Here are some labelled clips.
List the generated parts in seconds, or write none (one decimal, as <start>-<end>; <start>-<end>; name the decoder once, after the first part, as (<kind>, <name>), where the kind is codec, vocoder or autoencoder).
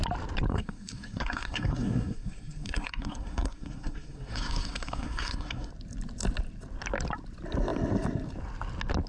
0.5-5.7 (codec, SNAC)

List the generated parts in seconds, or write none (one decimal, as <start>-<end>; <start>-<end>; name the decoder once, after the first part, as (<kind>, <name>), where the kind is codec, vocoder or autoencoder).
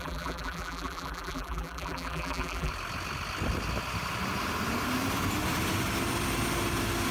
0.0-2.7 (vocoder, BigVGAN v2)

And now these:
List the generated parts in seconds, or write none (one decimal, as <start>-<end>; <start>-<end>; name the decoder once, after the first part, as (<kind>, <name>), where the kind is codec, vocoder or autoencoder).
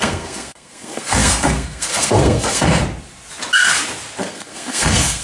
0.0-2.8 (codec, SNAC); 4.2-5.2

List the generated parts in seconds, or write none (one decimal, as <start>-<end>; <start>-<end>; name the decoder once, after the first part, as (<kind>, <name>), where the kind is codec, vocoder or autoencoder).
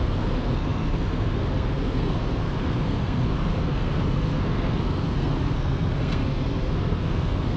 0.0-7.6 (codec, SNAC)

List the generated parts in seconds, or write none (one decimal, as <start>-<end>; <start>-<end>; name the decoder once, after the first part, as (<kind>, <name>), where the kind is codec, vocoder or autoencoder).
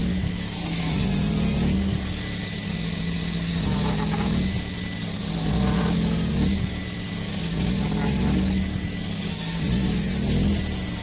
0.0-0.9 (autoencoder, DAC-VAE)